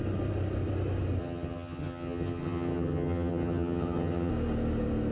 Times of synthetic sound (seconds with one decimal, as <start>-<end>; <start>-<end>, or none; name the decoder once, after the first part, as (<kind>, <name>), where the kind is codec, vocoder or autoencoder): 1.2-4.3 (vocoder, HiFi-GAN)